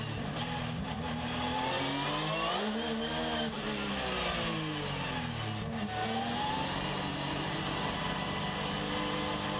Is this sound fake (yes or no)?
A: no